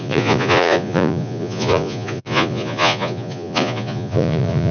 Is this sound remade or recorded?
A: remade